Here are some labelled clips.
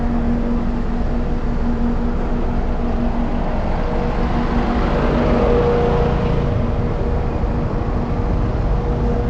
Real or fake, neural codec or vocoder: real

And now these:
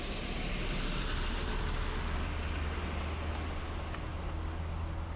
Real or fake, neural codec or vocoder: real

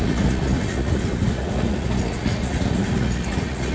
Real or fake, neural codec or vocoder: fake, vocoder, Vocos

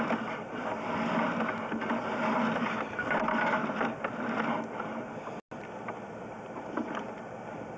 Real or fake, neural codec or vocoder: real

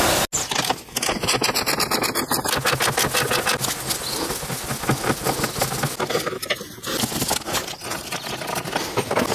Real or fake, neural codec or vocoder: real